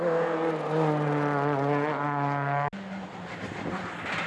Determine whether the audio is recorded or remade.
recorded